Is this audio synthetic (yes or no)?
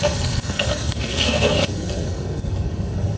yes